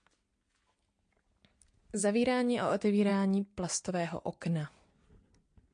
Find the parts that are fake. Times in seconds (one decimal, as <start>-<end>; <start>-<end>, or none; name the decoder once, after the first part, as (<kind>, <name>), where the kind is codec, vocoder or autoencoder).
2.0-2.7 (autoencoder, DAC-VAE)